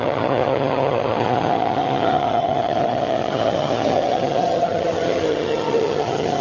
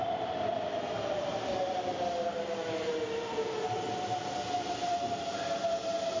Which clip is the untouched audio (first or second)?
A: second